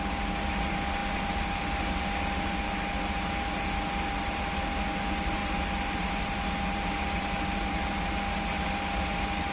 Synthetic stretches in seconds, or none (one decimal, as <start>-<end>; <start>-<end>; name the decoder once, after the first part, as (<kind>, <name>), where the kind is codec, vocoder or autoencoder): none